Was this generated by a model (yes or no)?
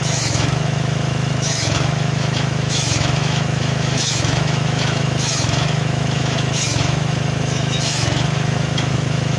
yes